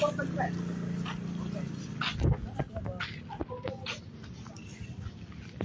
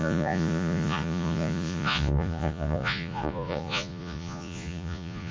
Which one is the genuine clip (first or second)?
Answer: first